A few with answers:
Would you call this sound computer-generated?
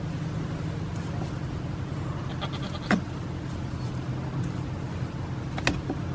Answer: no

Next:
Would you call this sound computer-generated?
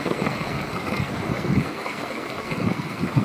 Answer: yes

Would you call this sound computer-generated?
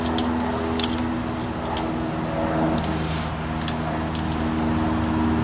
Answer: no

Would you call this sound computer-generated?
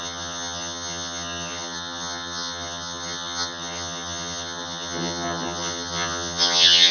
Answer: yes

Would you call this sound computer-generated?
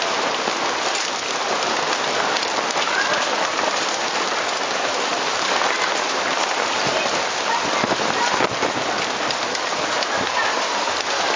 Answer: yes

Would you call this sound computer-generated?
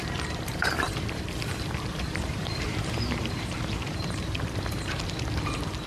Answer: yes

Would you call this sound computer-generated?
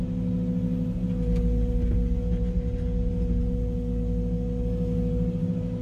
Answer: no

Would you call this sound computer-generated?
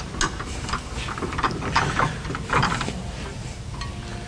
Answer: no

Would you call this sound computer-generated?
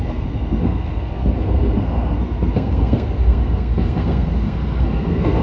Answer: yes